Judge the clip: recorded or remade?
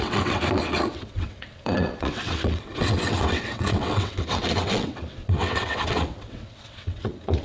remade